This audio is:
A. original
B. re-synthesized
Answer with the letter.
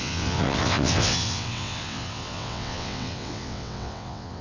B